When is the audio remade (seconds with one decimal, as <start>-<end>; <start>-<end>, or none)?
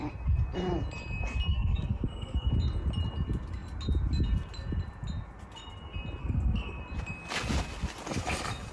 1.5-2.5; 6.2-6.8